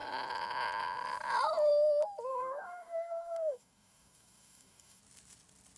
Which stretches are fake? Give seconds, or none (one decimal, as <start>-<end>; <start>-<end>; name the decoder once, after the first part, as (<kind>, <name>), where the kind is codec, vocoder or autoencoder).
2.3-5.0 (codec, DAC)